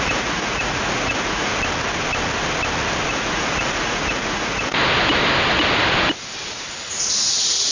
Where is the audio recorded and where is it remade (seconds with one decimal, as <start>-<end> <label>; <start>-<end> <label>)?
0.0-1.5 remade; 1.5-3.1 recorded; 3.1-4.7 remade; 4.7-6.9 recorded; 6.9-7.7 remade